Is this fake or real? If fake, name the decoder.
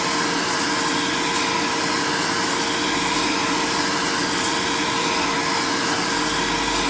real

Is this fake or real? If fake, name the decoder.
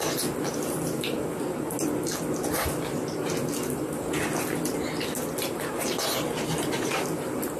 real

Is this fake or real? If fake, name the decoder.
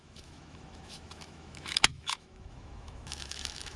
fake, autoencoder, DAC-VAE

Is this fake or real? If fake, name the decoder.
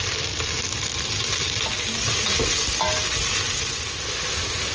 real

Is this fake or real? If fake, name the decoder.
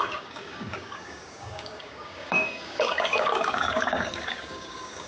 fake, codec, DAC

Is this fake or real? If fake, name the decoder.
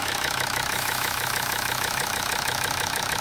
fake, autoencoder, DAC-VAE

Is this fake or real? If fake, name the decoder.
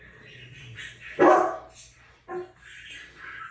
real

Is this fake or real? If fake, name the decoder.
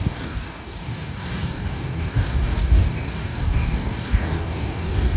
fake, codec, DAC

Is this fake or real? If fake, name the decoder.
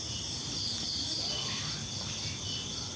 real